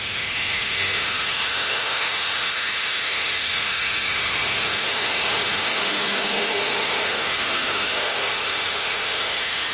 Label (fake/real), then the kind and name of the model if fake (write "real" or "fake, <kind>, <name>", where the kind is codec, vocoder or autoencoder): fake, autoencoder, DAC-VAE